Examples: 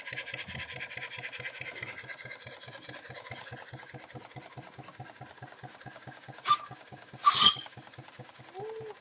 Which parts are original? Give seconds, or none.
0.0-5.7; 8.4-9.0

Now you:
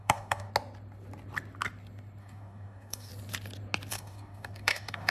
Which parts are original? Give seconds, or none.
0.5-2.2; 3.1-3.9

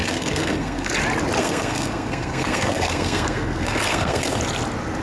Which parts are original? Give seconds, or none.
0.9-1.4; 4.4-5.0

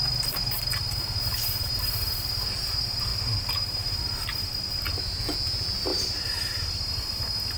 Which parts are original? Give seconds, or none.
0.0-7.6

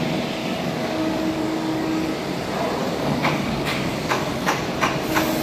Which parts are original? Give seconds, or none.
0.0-0.4; 2.1-2.8; 4.7-5.4